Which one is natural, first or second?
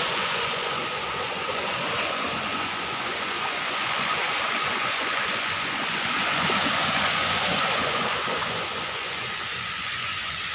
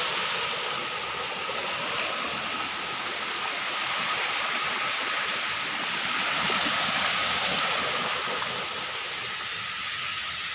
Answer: second